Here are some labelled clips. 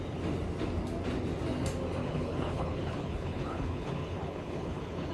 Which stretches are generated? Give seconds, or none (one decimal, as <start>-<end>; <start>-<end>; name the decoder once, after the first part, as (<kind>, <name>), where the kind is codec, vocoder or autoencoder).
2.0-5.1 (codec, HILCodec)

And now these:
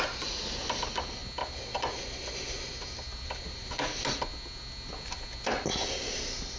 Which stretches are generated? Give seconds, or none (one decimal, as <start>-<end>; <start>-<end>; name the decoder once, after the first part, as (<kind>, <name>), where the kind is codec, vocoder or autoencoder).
none

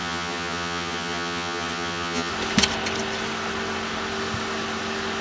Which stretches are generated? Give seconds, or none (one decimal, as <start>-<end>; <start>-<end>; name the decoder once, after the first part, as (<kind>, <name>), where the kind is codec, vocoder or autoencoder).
0.0-2.3 (vocoder, HiFi-GAN)

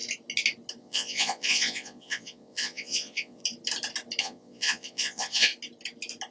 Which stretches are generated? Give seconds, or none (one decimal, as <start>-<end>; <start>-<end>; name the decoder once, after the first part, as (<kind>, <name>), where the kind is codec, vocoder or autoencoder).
0.8-3.4 (vocoder, Vocos); 4.2-5.5